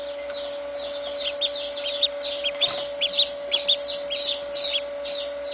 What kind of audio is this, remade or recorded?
recorded